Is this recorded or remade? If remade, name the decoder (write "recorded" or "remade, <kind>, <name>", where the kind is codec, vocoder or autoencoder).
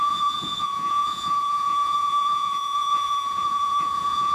remade, vocoder, Vocos